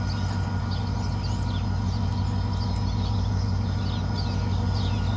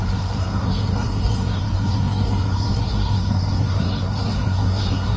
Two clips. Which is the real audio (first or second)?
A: first